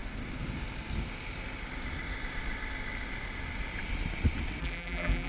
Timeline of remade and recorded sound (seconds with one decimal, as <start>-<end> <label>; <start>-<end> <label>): 0.0-4.6 recorded; 4.6-5.3 remade